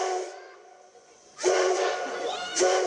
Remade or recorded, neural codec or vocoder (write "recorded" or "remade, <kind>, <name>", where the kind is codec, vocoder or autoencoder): remade, vocoder, Vocos